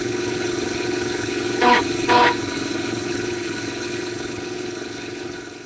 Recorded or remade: remade